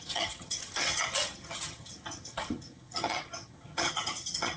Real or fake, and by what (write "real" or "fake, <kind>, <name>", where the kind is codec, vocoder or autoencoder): fake, vocoder, HiFi-GAN